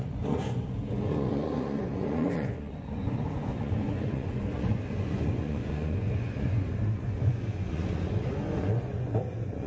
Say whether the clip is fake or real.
fake